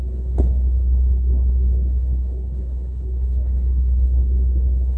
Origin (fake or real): fake